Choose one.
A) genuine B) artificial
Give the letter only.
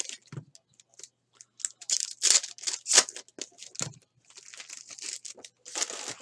A